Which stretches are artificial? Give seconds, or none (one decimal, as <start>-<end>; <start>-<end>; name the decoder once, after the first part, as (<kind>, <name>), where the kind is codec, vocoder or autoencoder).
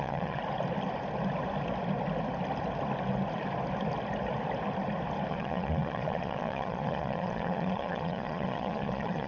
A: 0.0-0.4 (vocoder, Vocos); 5.3-9.3